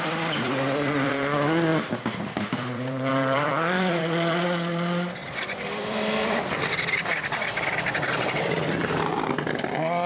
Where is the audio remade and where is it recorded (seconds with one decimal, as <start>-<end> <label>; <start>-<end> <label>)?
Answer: 0.0-10.1 remade